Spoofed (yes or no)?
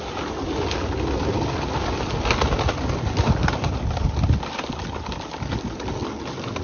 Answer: no